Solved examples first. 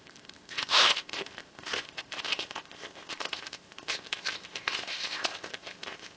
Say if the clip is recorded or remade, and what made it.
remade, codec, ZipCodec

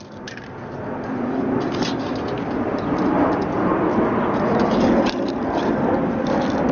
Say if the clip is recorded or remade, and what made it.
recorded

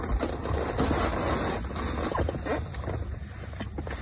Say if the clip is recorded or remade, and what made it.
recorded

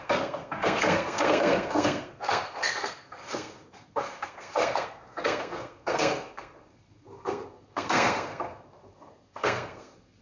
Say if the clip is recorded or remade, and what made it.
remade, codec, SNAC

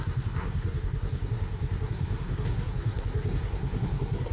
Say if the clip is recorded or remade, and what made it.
remade, codec, SNAC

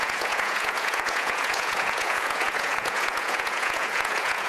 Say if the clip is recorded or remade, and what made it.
remade, vocoder, Vocos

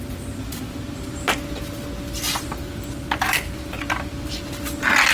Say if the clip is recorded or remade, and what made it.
recorded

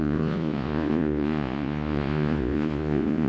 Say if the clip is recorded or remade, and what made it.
remade, vocoder, Vocos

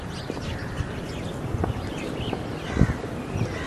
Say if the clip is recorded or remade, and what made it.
recorded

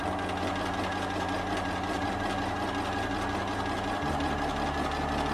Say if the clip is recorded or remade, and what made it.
recorded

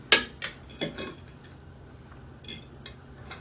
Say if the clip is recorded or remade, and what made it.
recorded